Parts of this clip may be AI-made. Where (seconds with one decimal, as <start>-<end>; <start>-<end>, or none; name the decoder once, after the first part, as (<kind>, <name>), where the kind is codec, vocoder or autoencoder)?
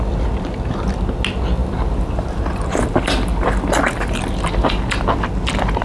1.6-5.1 (vocoder, BigVGAN v2)